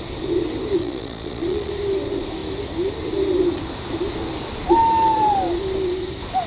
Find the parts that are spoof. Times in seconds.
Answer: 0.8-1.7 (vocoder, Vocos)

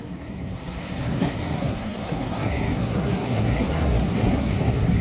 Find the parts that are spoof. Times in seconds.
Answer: 0.0-5.0 (codec, SNAC)